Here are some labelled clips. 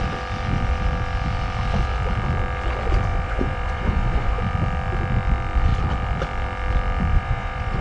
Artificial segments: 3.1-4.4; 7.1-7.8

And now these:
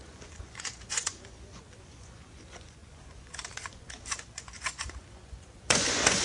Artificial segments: 0.0-6.2

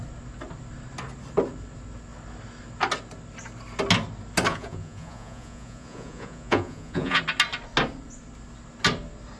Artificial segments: 4.5-7.2

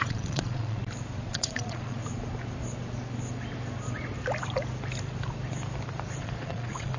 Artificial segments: 0.0-0.8; 1.3-2.0; 6.2-7.0

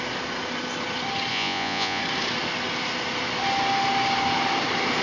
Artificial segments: 1.3-2.0

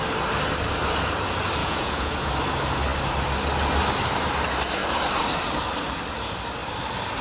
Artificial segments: 1.6-2.3

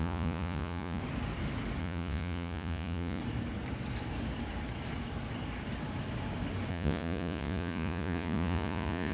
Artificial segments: 0.0-1.0; 1.8-3.2; 6.7-9.1

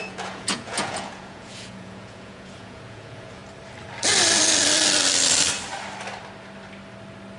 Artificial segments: 0.0-3.4